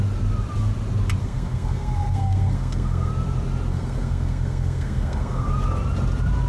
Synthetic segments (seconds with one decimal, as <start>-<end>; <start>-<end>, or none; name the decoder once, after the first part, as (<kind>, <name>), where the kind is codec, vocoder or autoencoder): 1.2-3.1 (codec, SNAC); 3.7-5.5